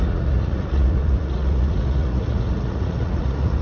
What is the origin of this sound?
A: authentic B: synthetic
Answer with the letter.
B